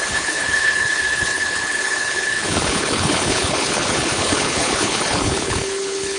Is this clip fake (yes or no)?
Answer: yes